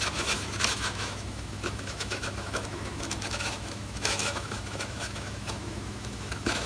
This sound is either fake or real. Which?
fake